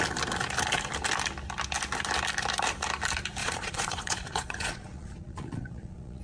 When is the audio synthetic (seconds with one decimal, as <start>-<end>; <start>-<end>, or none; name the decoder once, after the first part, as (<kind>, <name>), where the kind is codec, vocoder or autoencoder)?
3.4-6.2 (vocoder, Vocos)